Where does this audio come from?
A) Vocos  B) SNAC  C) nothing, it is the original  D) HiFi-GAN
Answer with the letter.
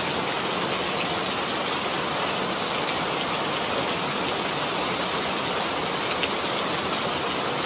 C